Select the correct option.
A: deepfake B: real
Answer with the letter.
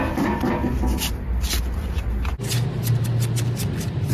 B